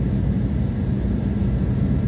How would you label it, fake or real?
real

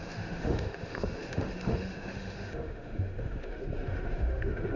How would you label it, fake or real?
fake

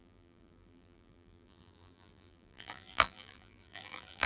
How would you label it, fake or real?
fake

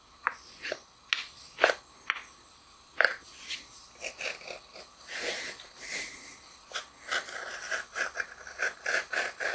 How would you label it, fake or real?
real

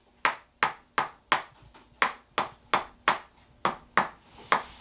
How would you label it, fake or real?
real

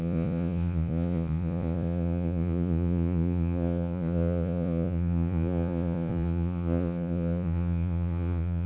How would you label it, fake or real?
fake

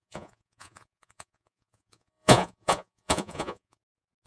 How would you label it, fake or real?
fake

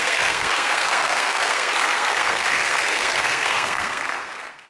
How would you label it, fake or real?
fake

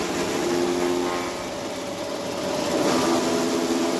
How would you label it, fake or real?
real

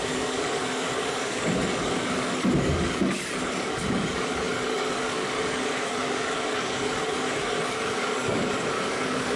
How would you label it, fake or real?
fake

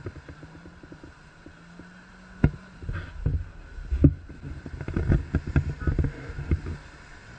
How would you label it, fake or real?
real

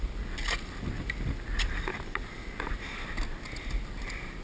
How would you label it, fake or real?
real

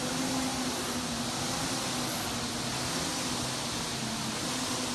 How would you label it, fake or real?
real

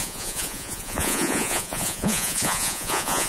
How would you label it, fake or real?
fake